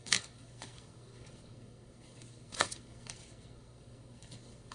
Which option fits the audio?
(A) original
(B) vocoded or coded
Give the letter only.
B